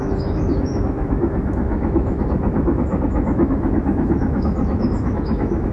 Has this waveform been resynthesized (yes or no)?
yes